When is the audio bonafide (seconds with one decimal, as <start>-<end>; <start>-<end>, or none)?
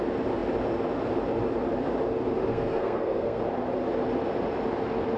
0.0-2.5; 3.4-5.2